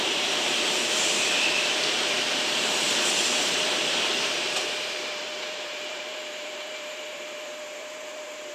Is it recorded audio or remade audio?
remade